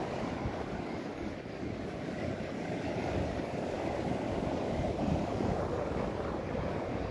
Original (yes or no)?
no